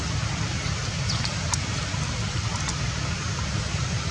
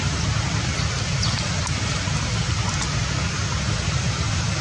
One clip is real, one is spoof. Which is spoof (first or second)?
first